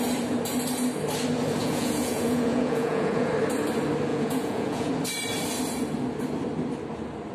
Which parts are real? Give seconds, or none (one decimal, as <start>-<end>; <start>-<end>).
0.0-1.6; 3.3-4.1; 4.9-7.3